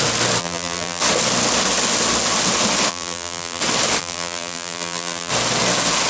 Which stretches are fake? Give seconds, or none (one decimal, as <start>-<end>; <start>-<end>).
0.4-1.0; 2.9-3.6; 4.0-5.3